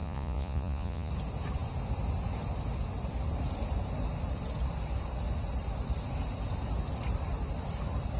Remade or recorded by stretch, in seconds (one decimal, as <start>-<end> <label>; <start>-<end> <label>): 0.0-1.1 remade; 1.1-8.2 recorded